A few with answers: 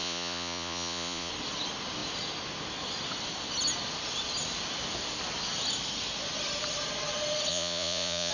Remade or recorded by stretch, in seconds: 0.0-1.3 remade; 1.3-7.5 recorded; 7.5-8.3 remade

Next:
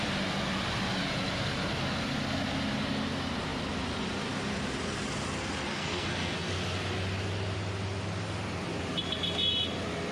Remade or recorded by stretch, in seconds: 0.0-5.7 recorded; 5.7-6.5 remade; 6.5-10.1 recorded

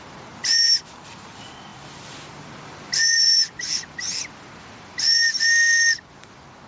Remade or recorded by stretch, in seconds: 0.0-6.7 recorded

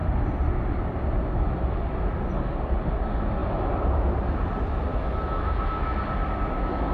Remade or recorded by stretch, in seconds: 0.0-4.9 recorded; 4.9-6.0 remade; 6.0-6.9 recorded

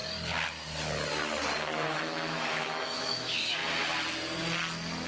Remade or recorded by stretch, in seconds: 0.0-2.0 recorded; 2.0-3.6 remade; 3.6-5.1 recorded

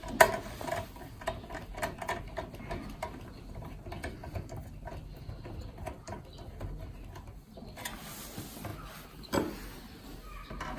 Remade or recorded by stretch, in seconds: 0.0-10.8 recorded